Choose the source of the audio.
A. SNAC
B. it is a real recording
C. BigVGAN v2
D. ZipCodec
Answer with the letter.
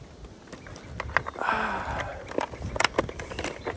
B